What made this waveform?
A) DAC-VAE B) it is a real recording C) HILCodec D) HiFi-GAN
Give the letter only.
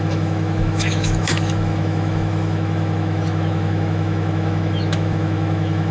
A